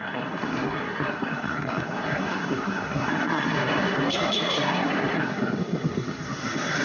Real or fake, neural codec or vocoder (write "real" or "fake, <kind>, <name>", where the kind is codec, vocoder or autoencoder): fake, codec, SNAC